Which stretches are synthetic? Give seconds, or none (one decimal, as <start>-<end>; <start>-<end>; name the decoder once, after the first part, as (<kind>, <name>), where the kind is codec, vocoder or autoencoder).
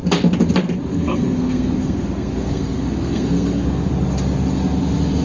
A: 0.9-3.9 (codec, SNAC)